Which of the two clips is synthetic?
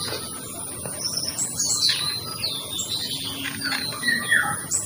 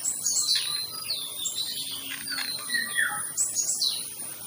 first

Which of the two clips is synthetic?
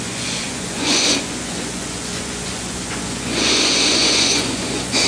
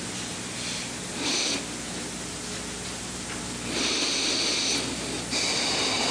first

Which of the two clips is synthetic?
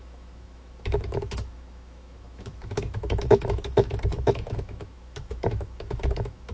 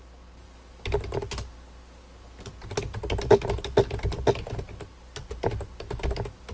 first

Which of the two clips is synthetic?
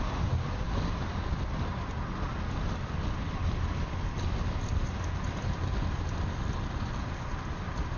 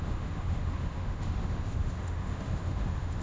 second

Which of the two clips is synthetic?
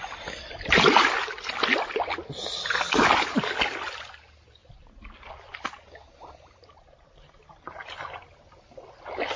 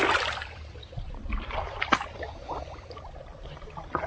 second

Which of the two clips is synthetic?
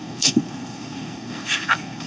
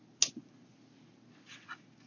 first